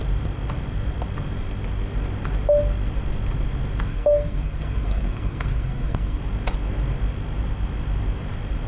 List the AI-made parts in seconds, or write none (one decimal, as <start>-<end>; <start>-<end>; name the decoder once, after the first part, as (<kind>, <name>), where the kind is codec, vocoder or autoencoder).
3.9-6.2 (codec, SNAC)